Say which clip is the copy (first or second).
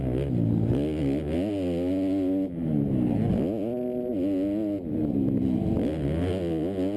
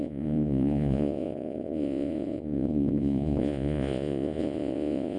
second